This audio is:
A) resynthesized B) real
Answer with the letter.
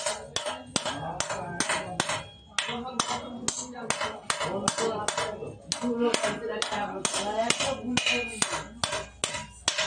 B